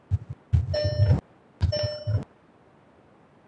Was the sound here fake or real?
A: real